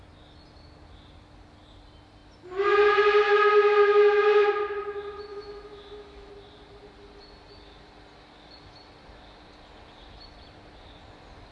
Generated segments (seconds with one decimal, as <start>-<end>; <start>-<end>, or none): 5.3-6.3